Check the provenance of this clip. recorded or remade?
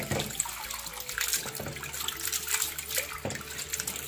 recorded